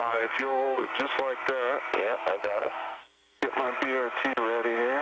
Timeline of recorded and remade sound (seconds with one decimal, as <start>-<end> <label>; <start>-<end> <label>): 0.0-0.9 remade; 0.9-2.4 recorded; 2.4-3.4 remade; 3.4-5.0 recorded